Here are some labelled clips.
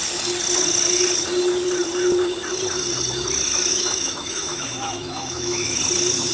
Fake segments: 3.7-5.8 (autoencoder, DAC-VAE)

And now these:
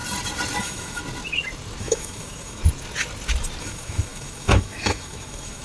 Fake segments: 0.6-1.0 (autoencoder, DAC-VAE); 1.8-2.6; 3.6-5.6

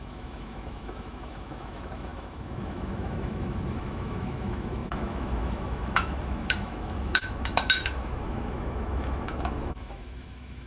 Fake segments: 0.0-10.7 (autoencoder, DAC-VAE)

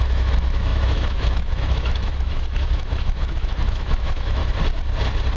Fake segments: 0.0-4.4 (autoencoder, DAC-VAE)